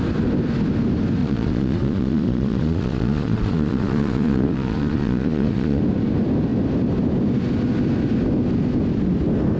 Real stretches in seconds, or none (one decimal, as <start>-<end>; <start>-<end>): 0.0-1.2; 5.8-9.6